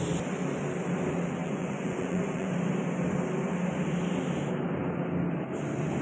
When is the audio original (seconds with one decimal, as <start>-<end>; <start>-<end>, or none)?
0.0-1.4; 2.6-6.0